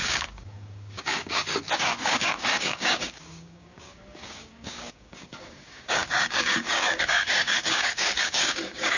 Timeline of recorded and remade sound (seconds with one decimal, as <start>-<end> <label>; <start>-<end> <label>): 0.0-9.0 remade